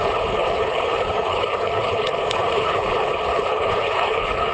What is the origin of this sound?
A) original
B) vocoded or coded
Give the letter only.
B